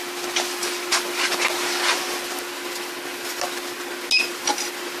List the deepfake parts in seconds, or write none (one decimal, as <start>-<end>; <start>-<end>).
none